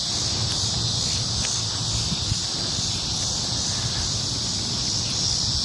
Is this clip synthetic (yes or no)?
no